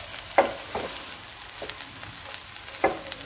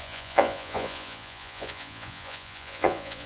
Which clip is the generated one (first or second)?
second